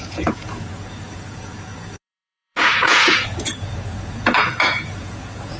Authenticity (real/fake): fake